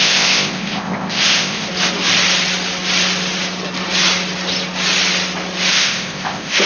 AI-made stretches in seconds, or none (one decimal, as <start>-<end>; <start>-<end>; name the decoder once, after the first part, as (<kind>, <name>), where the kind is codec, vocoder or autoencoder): 0.0-1.7 (codec, ZipCodec); 5.7-6.7

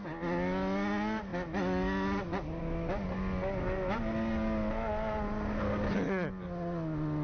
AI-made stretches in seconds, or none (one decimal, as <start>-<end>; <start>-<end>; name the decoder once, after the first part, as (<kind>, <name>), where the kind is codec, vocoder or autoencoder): none